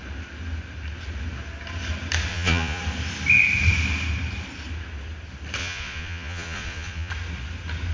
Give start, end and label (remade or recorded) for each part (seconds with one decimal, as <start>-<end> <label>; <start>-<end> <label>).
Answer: 0.0-2.3 recorded; 2.3-2.8 remade; 2.8-5.6 recorded; 5.6-7.1 remade; 7.1-7.9 recorded